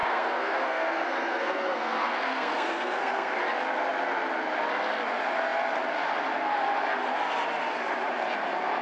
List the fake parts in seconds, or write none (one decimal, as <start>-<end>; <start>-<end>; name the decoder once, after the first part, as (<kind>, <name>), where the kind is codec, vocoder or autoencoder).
0.0-3.4 (codec, SNAC)